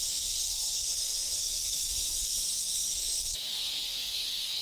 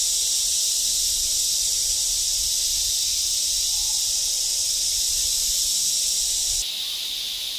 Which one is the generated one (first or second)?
first